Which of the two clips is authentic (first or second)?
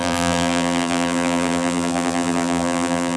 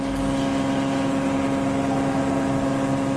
second